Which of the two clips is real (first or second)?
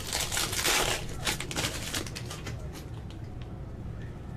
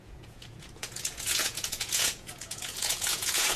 first